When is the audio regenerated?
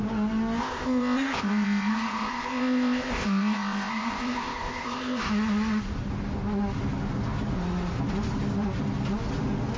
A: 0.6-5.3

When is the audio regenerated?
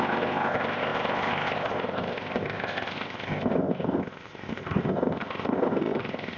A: 0.0-6.4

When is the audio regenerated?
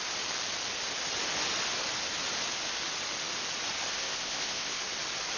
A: 3.9-4.8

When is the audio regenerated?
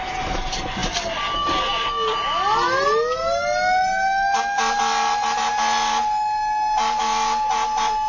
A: none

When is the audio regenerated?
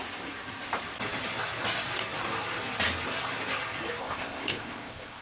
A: 4.0-5.2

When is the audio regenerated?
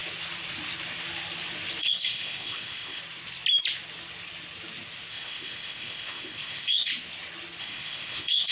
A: 1.8-3.0; 5.1-6.9; 7.6-8.5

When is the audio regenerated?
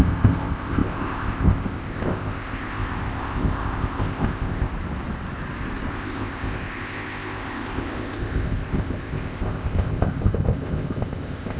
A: 0.0-4.7; 5.9-11.6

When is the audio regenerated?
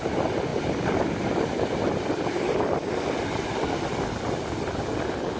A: none